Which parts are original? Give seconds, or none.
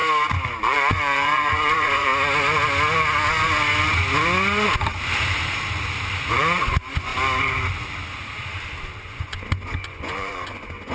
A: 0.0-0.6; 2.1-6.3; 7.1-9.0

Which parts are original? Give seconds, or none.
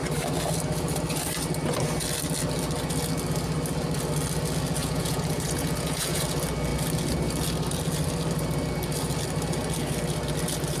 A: 0.0-4.8; 6.2-10.8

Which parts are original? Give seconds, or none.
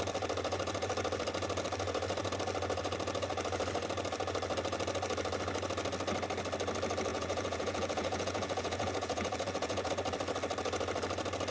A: 0.0-7.1; 9.9-11.5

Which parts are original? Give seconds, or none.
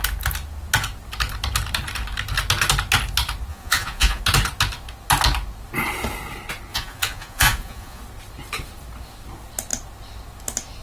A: 0.0-3.5; 4.2-6.7; 8.0-10.8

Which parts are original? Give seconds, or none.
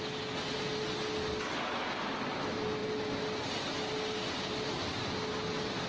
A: 0.0-5.9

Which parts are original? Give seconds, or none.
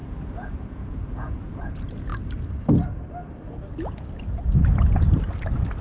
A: 1.7-5.8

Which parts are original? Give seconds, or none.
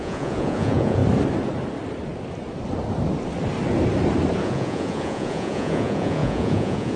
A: 1.0-4.4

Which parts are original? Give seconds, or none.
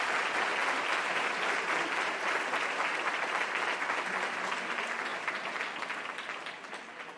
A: 0.0-7.2